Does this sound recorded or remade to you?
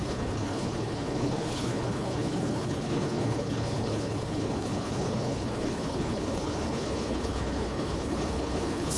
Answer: remade